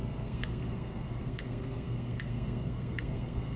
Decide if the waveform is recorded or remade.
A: remade